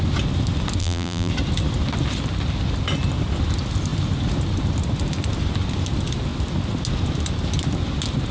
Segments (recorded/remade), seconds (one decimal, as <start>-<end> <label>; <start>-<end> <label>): 0.0-0.8 recorded; 0.8-1.3 remade; 1.3-8.3 recorded